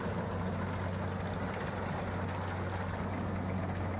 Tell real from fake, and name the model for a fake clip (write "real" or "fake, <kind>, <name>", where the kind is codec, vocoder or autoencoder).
real